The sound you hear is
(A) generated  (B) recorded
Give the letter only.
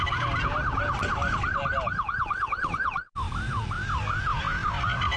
B